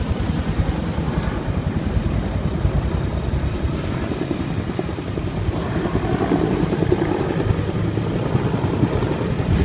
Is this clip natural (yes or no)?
no